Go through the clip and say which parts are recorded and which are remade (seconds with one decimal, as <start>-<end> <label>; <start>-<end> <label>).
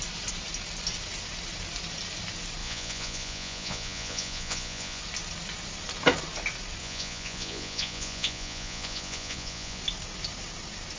0.0-2.6 recorded; 2.6-5.0 remade; 5.0-6.8 recorded; 6.8-9.8 remade; 9.8-11.0 recorded